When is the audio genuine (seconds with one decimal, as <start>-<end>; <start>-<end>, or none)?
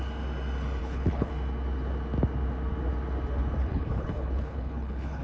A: 0.0-0.8; 1.3-3.6